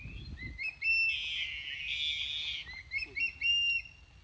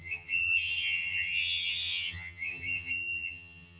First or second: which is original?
first